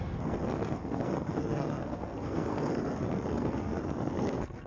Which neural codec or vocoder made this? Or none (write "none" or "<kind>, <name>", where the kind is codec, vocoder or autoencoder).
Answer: codec, SNAC